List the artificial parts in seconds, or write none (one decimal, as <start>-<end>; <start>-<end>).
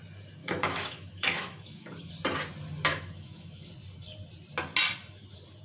0.4-2.1; 2.9-3.7